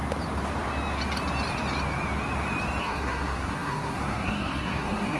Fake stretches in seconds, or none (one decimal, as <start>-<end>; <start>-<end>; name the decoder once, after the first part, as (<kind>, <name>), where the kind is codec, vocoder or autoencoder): 2.8-5.2 (codec, SNAC)